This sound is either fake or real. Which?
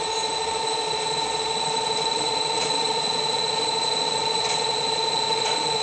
fake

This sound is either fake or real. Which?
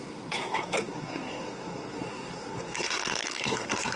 fake